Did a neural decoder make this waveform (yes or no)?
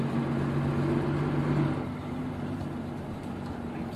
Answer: no